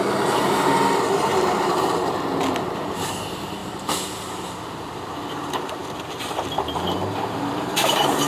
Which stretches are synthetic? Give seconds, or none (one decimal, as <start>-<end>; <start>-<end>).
1.3-1.9; 3.6-8.3